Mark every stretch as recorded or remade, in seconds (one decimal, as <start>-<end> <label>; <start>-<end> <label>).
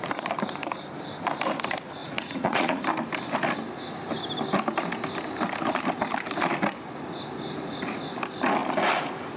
0.0-2.0 recorded; 2.0-2.8 remade; 2.8-9.4 recorded